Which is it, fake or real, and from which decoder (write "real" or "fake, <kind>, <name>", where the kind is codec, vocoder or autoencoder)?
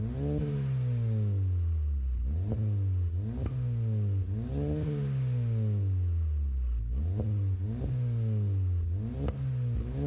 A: real